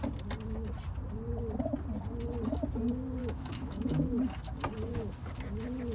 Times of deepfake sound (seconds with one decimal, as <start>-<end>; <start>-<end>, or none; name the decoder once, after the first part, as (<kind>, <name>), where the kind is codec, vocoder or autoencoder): 3.2-4.1 (autoencoder, DAC-VAE)